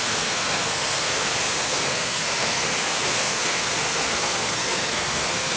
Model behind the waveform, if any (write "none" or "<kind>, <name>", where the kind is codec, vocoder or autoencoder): codec, SNAC